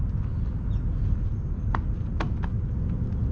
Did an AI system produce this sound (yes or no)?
no